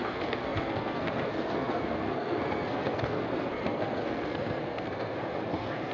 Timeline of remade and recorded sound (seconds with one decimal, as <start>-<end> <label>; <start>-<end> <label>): 0.0-5.9 remade